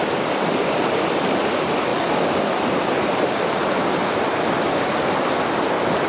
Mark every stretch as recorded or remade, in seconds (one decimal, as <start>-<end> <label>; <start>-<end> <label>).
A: 0.0-6.1 recorded